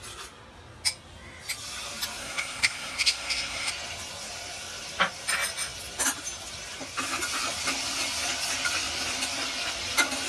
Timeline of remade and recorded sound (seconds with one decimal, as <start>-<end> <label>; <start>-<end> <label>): 0.0-2.2 recorded; 2.2-3.7 remade; 3.7-10.3 recorded